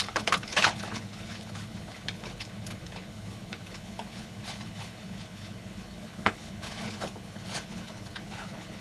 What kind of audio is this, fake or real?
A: fake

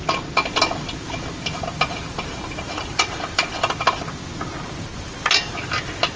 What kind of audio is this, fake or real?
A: real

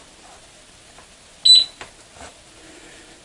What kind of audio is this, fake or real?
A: real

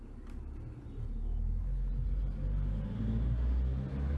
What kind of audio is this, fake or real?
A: real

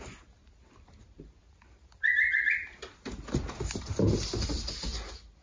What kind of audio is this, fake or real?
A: real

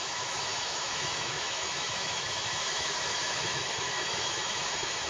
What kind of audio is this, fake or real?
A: fake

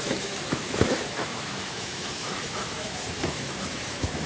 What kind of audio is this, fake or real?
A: fake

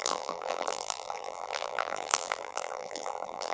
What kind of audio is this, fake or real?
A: fake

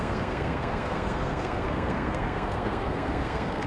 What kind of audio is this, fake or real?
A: fake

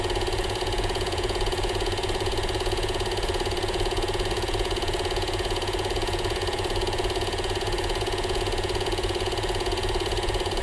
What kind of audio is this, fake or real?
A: fake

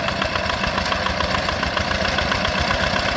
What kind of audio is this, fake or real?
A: real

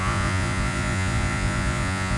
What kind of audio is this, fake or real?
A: fake